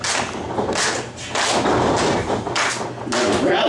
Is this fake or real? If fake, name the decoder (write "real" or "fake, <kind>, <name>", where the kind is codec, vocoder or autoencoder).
real